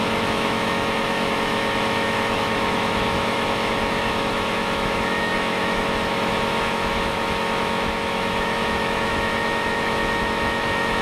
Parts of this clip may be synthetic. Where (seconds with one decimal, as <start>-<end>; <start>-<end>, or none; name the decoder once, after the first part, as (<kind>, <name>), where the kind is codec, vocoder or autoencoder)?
0.0-11.0 (autoencoder, DAC-VAE)